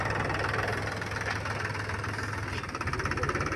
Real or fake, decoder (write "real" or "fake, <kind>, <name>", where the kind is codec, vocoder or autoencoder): real